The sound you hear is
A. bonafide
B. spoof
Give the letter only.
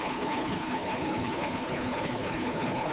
B